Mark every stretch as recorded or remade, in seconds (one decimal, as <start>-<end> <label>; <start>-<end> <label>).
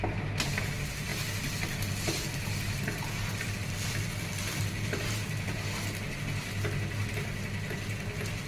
0.0-8.5 recorded